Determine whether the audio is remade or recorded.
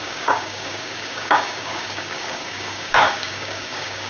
remade